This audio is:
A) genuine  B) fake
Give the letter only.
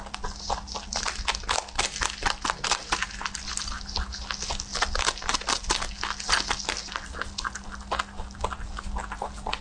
A